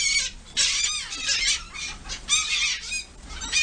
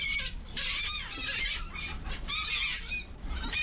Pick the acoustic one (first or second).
first